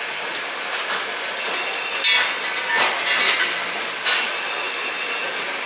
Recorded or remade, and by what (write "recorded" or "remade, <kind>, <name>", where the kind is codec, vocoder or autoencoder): recorded